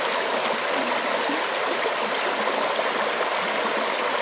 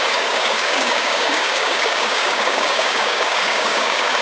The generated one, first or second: second